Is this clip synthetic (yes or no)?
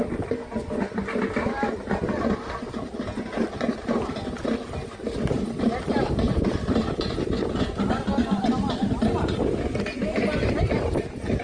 no